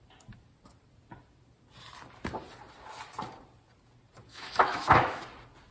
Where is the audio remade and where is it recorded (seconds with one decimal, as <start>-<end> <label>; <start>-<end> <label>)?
0.0-4.3 recorded; 4.3-5.2 remade; 5.2-5.7 recorded